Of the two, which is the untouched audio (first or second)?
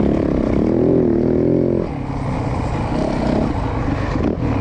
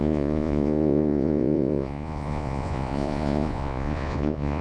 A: first